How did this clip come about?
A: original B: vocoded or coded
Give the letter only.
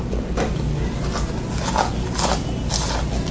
A